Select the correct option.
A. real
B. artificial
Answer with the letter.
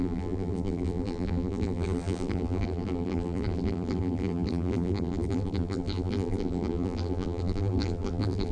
B